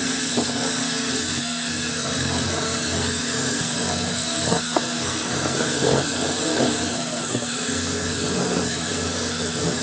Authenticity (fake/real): fake